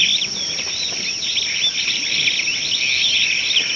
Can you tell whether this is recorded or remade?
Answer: recorded